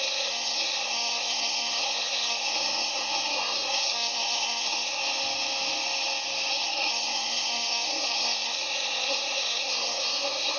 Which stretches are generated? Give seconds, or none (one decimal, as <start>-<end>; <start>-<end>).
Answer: 0.0-5.0; 6.5-10.6